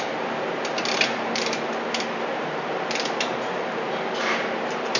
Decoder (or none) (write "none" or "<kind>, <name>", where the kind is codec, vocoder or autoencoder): none